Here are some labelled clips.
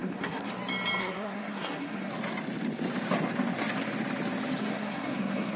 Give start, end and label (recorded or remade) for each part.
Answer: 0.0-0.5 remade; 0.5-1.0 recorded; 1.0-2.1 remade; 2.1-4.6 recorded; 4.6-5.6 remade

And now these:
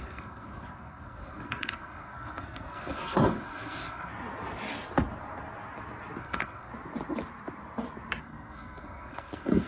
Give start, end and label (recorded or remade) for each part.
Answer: 0.0-4.1 remade; 4.1-6.2 recorded; 6.2-6.7 remade; 6.7-8.2 recorded; 8.2-9.7 remade

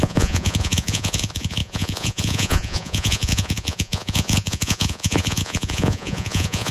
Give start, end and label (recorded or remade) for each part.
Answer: 0.0-6.7 remade